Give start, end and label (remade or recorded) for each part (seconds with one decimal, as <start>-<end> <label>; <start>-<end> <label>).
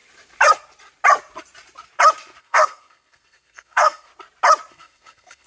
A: 0.0-2.4 recorded; 2.4-4.1 remade; 4.1-4.7 recorded; 4.7-5.5 remade